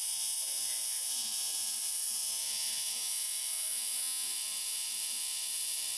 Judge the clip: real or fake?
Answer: fake